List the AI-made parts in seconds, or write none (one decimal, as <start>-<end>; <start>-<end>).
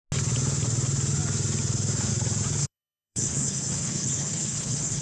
2.6-5.0